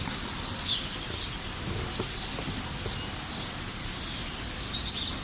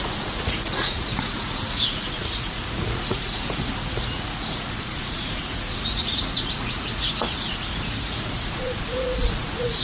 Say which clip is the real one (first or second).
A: first